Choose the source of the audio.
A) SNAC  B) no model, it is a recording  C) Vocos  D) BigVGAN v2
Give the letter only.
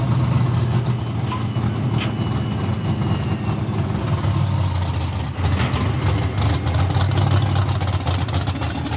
B